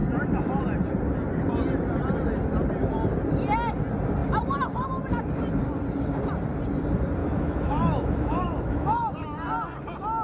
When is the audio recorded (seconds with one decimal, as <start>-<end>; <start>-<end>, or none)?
0.0-7.2; 9.1-10.2